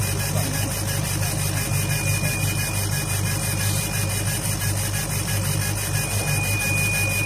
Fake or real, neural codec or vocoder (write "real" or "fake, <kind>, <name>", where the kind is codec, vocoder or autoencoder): real